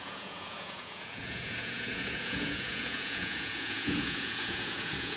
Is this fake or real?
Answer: fake